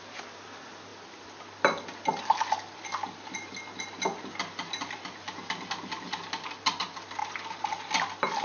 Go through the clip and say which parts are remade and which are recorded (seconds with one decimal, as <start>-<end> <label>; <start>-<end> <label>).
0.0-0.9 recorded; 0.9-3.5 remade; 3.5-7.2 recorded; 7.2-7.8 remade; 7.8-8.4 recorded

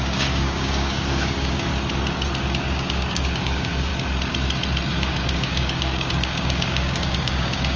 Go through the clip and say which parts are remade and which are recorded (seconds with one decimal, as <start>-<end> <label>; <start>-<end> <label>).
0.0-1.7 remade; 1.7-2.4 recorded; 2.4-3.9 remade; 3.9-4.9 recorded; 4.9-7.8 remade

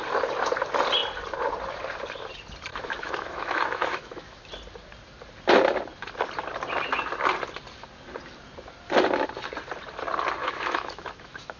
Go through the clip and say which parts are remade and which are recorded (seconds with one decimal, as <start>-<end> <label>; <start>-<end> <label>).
0.0-2.7 recorded; 2.7-4.5 remade; 4.5-10.4 recorded; 10.4-11.6 remade

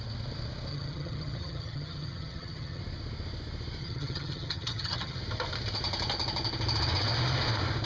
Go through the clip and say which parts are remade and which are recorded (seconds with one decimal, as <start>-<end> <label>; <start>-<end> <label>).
0.0-0.7 recorded; 0.7-2.8 remade; 2.8-3.8 recorded; 3.8-5.2 remade; 5.2-7.9 recorded

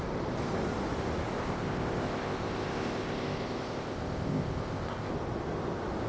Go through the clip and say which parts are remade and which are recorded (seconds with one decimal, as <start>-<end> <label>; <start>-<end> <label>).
0.0-1.4 recorded; 1.4-5.1 remade; 5.1-6.1 recorded

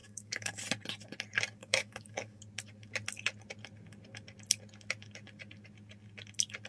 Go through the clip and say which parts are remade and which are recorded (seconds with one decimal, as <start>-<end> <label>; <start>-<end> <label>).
0.0-0.6 remade; 0.6-1.6 recorded; 1.6-2.4 remade; 2.4-6.7 recorded